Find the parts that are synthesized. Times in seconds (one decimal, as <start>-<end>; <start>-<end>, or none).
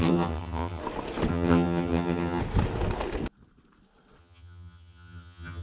0.0-0.8; 1.3-2.4; 4.2-5.6